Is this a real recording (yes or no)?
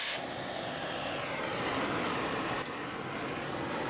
yes